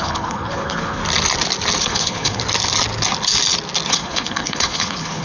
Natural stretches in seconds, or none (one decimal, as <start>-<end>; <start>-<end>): 1.0-1.8; 2.4-3.9